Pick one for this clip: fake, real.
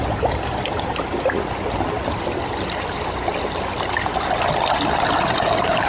real